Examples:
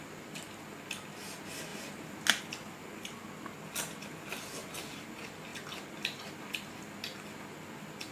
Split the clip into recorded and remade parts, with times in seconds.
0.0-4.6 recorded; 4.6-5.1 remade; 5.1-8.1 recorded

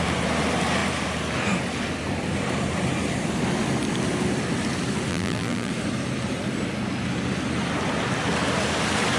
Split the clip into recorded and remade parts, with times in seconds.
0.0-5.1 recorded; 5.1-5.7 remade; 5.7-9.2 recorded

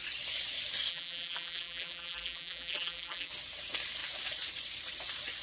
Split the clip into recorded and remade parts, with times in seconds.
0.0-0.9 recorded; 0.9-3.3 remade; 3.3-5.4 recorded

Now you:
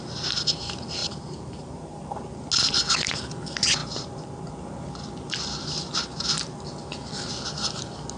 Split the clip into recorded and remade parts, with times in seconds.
0.0-1.0 recorded; 1.0-2.3 remade; 2.3-3.8 recorded; 3.8-4.5 remade; 4.5-8.2 recorded

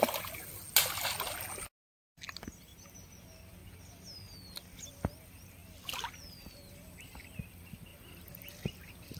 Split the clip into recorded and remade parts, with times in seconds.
0.0-2.7 recorded; 2.7-3.2 remade; 3.2-9.2 recorded